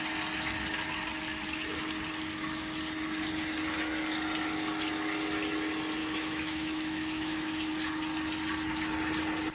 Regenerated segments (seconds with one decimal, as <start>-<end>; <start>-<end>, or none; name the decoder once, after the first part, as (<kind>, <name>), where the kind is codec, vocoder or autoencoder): 6.0-7.7 (autoencoder, DAC-VAE)